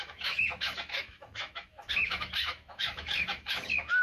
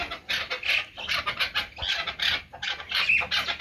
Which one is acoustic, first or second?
second